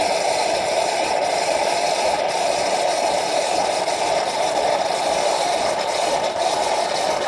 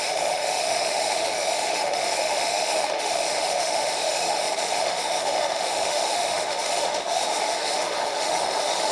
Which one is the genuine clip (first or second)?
first